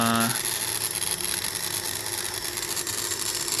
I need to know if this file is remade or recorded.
recorded